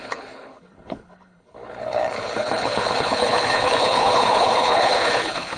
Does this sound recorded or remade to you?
remade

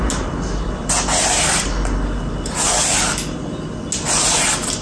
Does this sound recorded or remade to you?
recorded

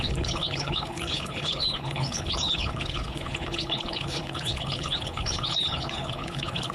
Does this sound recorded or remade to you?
remade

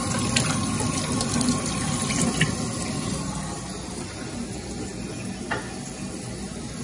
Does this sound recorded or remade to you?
recorded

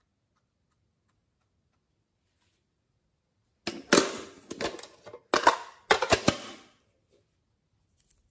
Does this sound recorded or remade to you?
recorded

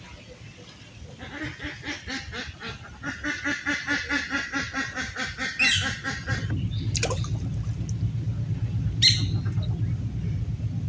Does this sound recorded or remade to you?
recorded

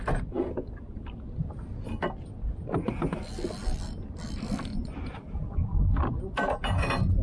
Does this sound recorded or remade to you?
recorded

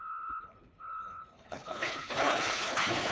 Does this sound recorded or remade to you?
remade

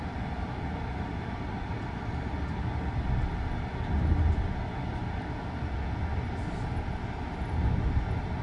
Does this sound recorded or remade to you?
recorded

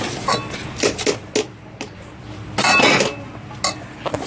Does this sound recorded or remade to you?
recorded